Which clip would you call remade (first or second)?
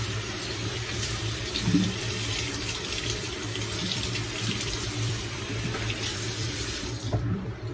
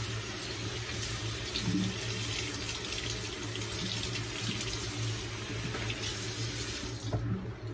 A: first